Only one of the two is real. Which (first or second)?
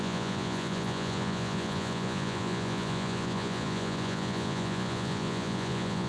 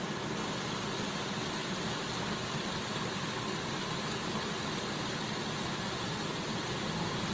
second